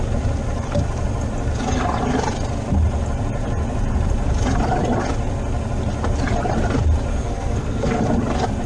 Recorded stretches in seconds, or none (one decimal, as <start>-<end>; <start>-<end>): 0.0-7.1; 8.0-8.7